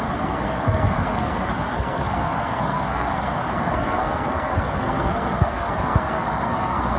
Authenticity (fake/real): fake